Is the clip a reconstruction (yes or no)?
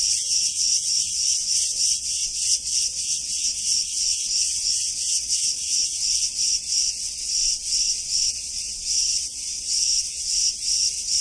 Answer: yes